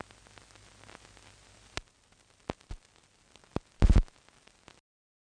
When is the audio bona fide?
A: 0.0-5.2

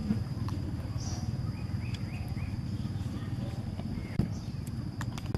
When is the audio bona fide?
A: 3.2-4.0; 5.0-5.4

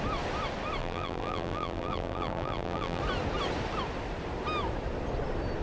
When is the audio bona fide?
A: 0.0-0.8; 3.0-5.6

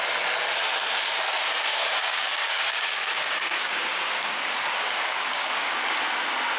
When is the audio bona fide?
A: 0.0-1.7; 5.7-6.6

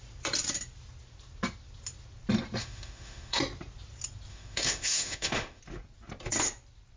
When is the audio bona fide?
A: 0.0-2.6; 3.4-4.3; 5.6-7.0

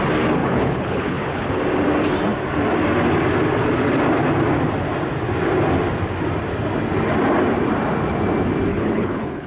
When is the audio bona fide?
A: 0.0-0.4; 1.6-8.7

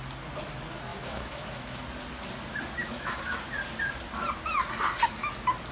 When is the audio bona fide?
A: 0.0-0.9; 1.8-2.8; 3.4-5.7

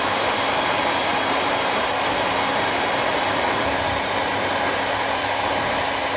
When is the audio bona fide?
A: 1.1-4.4